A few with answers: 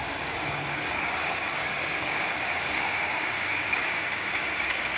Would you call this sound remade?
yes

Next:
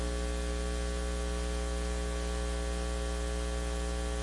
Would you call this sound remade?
no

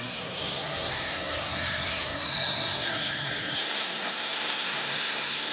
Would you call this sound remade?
yes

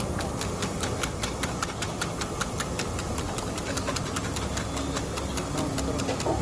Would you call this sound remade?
no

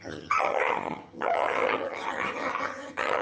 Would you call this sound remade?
yes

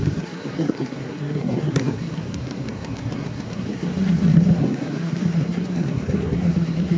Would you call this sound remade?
yes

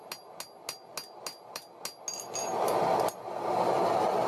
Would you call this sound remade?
no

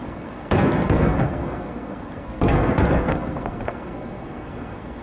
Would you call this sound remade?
yes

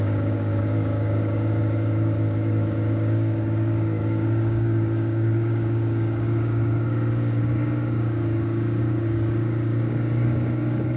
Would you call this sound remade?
yes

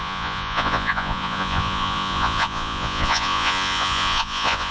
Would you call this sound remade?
yes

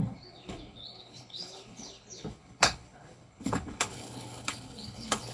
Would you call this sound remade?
yes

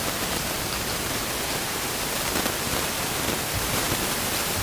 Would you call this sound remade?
no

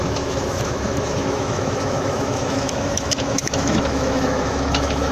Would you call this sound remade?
yes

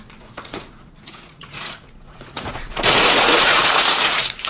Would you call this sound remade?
yes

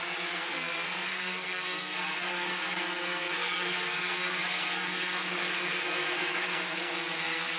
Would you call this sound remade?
yes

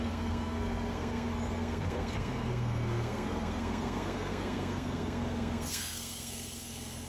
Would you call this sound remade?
yes